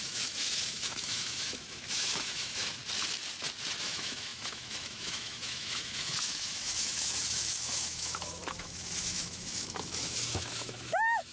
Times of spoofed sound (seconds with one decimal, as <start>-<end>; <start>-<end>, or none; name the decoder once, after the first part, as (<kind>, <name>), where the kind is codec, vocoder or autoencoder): 0.0-2.8 (autoencoder, DAC-VAE); 3.8-11.3